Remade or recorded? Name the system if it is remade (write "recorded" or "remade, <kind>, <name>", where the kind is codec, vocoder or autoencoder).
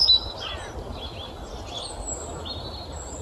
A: recorded